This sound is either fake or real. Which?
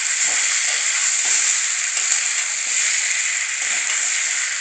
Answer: real